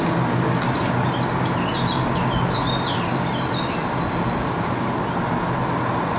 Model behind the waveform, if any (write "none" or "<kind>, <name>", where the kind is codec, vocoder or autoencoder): none